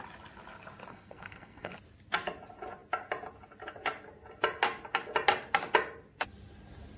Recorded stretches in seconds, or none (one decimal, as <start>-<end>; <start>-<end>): 0.0-0.9; 1.7-7.0